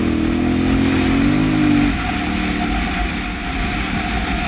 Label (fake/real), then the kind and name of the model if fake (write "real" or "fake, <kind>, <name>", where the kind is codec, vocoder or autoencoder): real